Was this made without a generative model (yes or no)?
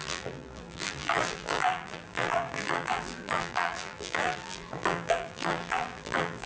no